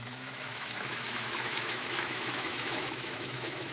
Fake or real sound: fake